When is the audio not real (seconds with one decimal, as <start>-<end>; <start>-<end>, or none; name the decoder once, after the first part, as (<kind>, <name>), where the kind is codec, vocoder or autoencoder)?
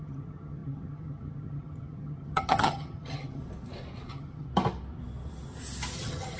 0.0-3.4 (vocoder, HiFi-GAN); 4.1-4.5; 6.0-6.4